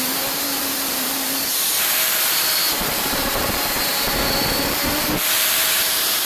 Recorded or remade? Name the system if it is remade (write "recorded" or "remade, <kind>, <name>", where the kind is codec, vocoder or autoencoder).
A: remade, vocoder, BigVGAN v2